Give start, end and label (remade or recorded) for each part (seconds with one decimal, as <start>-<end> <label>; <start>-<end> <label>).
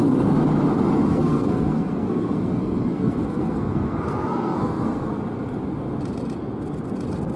0.0-1.1 recorded; 1.1-5.2 remade; 5.2-7.4 recorded